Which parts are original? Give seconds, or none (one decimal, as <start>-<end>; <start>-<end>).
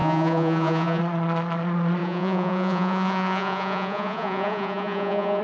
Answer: 1.0-2.0